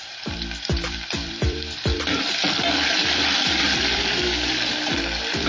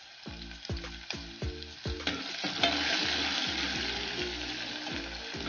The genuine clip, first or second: second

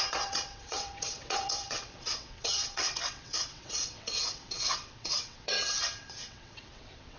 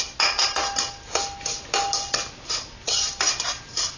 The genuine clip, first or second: second